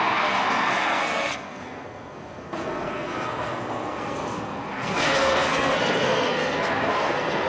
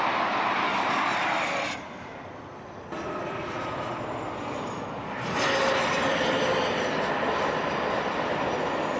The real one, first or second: second